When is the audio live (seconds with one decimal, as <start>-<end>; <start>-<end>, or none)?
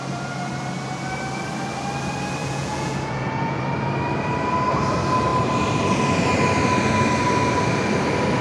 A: 0.0-2.4; 3.6-8.4